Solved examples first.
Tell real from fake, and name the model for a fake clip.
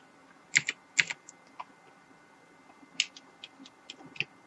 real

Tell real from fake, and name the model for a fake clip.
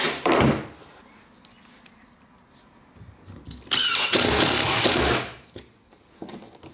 real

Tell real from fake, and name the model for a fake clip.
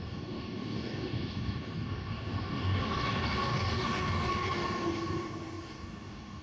fake, codec, DAC